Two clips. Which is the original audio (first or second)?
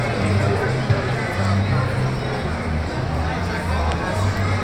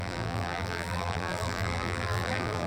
first